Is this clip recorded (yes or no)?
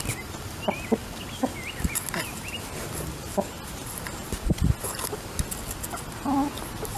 yes